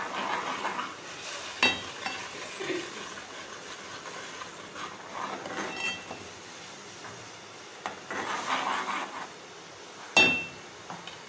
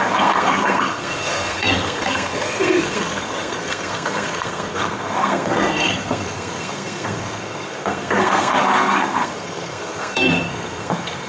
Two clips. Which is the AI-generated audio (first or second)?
second